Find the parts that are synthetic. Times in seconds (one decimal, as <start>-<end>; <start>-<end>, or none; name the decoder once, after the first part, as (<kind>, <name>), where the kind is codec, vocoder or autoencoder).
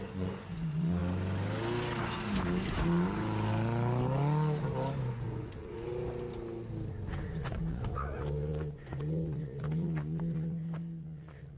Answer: 0.0-1.0 (vocoder, Vocos); 5.1-5.9; 6.9-11.6